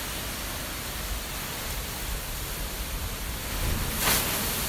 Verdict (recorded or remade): recorded